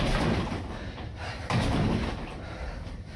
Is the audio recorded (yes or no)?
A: no